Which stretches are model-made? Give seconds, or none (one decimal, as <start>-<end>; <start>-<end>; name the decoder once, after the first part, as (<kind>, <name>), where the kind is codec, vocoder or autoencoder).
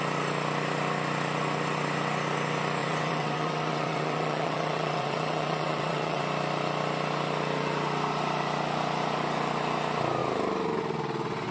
2.8-6.2 (vocoder, WaveNeXt)